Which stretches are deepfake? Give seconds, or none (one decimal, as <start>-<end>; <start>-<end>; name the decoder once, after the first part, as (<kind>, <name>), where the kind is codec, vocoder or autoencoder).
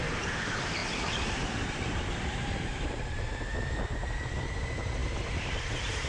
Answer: 0.0-0.8 (vocoder, BigVGAN v2); 1.6-3.5; 4.2-6.1